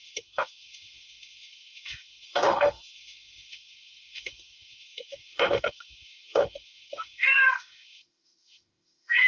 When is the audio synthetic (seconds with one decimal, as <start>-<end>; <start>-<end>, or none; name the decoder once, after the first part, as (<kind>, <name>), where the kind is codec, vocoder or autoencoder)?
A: 0.0-9.3 (autoencoder, DAC-VAE)